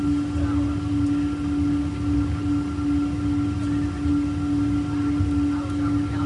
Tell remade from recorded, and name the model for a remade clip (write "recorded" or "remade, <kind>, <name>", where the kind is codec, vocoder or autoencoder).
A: recorded